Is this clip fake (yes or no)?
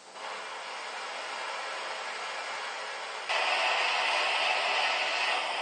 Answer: no